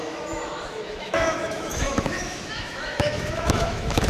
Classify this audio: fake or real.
fake